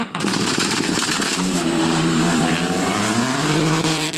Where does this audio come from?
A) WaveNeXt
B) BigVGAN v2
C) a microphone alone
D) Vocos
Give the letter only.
B